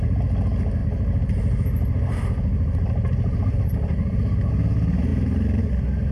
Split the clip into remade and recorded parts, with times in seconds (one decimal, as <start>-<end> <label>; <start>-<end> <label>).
0.0-0.8 recorded; 0.8-4.5 remade; 4.5-5.1 recorded; 5.1-5.6 remade; 5.6-6.1 recorded